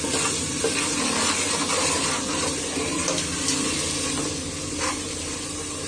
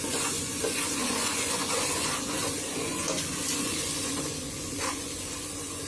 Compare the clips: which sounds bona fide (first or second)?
first